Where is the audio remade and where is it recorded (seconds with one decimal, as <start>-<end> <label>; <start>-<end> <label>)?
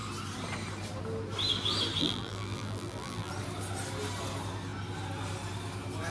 0.0-2.0 recorded; 2.0-3.3 remade; 3.3-6.1 recorded